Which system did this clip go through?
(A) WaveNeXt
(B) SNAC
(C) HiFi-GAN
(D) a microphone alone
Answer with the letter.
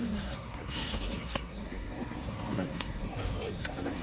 B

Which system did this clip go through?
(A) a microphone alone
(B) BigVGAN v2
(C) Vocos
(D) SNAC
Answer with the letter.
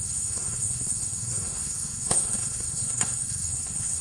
D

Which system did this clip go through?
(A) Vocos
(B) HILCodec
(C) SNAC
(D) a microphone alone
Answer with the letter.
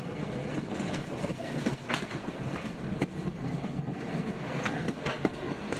C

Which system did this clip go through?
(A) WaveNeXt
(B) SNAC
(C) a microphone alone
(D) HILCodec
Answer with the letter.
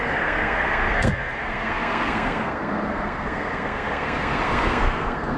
B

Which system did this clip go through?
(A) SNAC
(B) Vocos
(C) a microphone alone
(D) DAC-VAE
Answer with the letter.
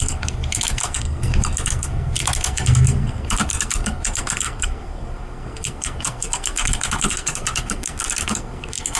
A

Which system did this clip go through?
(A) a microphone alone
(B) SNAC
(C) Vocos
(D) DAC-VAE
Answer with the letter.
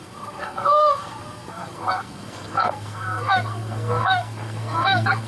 B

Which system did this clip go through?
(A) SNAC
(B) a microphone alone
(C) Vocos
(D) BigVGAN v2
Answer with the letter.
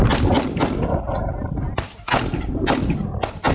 B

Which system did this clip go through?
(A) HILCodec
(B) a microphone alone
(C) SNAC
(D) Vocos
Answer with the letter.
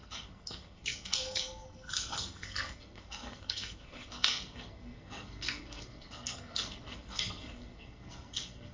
C